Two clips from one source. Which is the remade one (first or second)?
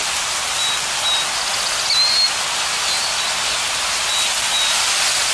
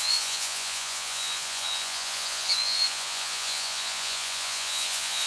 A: second